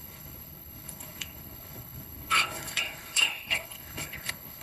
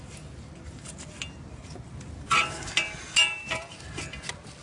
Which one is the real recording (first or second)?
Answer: second